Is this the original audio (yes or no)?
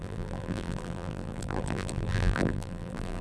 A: no